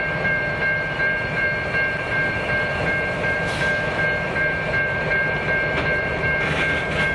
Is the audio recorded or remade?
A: remade